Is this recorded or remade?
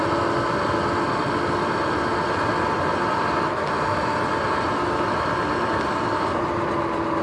recorded